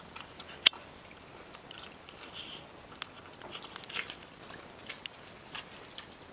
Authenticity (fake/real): real